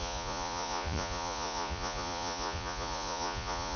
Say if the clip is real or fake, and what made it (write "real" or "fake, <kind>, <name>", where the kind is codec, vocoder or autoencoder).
fake, vocoder, Vocos